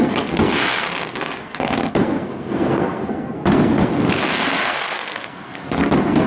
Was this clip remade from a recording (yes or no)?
yes